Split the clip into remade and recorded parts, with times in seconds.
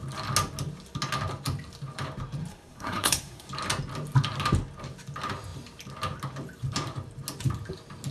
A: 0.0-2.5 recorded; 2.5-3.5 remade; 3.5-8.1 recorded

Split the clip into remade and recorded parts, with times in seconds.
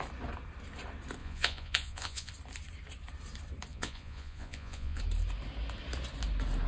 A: 0.0-1.2 recorded; 1.2-2.3 remade; 2.3-3.7 recorded; 3.7-5.0 remade; 5.0-6.7 recorded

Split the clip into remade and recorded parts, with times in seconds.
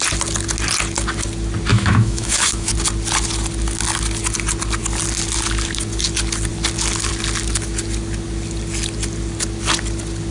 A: 0.0-1.7 recorded; 1.7-2.7 remade; 2.7-10.3 recorded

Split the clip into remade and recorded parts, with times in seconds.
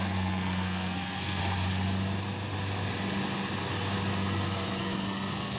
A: 0.0-1.4 remade; 1.4-4.8 recorded; 4.8-5.6 remade